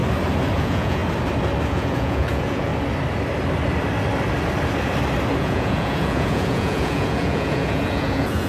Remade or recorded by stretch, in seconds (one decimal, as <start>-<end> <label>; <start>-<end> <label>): 0.0-0.6 recorded; 0.6-1.0 remade; 1.0-1.7 recorded; 1.7-2.7 remade; 2.7-5.4 recorded; 5.4-8.5 remade